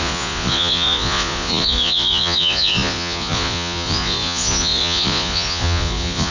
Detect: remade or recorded remade